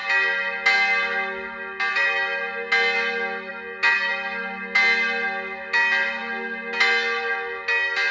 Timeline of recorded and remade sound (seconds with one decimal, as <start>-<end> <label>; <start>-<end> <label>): 0.0-8.1 recorded